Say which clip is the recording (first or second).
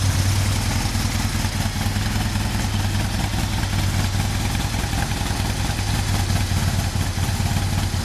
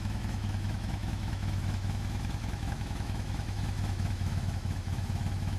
first